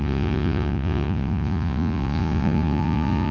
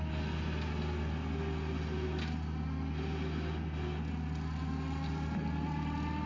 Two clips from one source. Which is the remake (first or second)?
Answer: first